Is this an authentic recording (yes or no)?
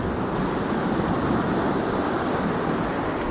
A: no